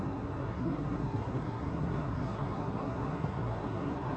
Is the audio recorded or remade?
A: remade